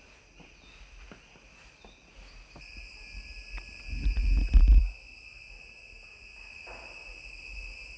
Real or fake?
real